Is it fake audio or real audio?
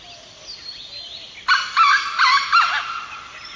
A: real